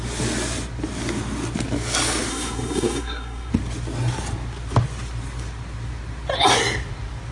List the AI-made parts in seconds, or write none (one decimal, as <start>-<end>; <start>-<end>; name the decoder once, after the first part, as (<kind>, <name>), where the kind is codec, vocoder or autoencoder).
2.3-3.5 (codec, SNAC)